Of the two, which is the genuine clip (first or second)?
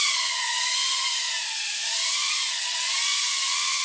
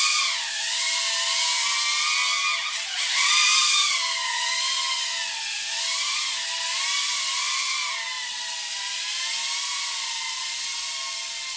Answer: second